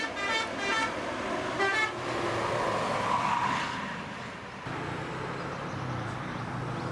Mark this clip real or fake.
real